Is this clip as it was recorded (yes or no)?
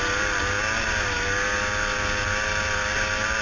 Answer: yes